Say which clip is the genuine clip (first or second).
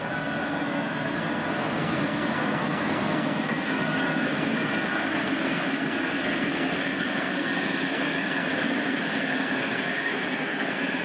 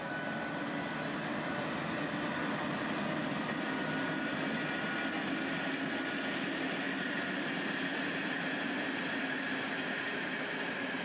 second